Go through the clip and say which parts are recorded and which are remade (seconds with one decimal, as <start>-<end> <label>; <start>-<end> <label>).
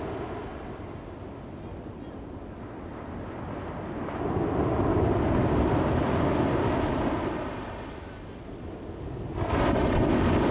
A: 0.0-10.5 recorded